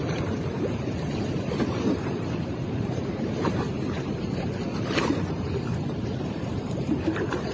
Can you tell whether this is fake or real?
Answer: fake